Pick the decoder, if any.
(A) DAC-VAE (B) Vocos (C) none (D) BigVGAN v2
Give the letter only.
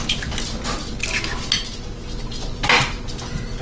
C